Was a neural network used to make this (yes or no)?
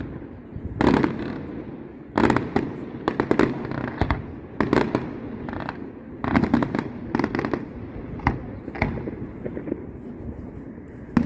no